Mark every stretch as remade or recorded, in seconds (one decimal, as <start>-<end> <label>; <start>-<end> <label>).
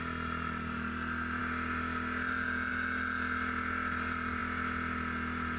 0.0-5.6 recorded